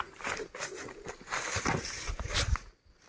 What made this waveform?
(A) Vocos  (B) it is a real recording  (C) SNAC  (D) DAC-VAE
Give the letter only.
B